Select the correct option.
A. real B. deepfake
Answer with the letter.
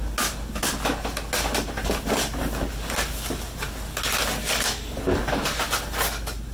A